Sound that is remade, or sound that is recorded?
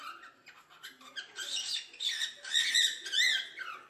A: recorded